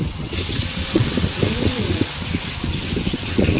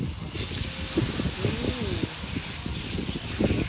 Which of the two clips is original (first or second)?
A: second